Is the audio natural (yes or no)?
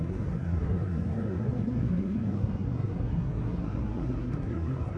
no